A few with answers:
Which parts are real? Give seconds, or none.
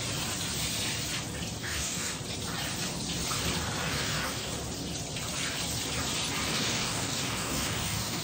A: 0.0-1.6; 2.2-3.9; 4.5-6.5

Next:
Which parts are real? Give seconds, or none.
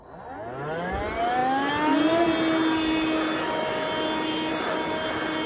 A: 0.0-5.5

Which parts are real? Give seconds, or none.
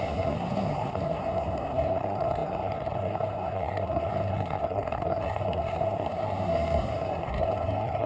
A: none